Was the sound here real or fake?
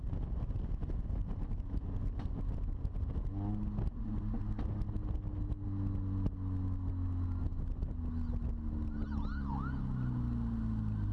real